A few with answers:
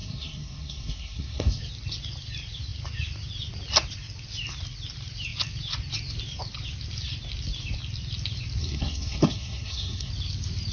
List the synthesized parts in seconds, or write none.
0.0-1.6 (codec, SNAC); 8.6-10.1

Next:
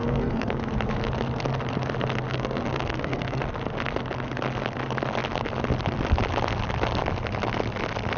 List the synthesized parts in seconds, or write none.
0.0-0.6 (codec, SNAC); 2.3-3.4

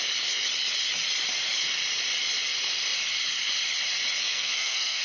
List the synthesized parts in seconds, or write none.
4.2-5.0 (codec, SNAC)

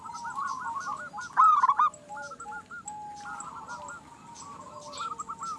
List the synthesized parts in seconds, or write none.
none

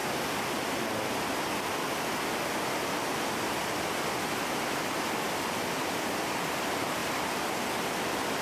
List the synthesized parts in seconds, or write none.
none

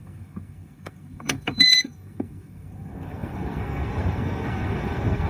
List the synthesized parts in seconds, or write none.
0.0-5.3 (codec, SNAC)

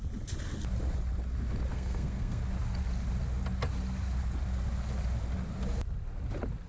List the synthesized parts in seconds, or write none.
1.7-2.4 (codec, SNAC)

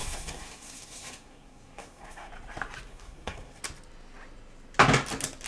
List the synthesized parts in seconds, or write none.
0.0-2.3 (codec, SNAC); 2.9-3.6